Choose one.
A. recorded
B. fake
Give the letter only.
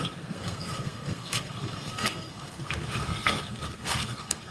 B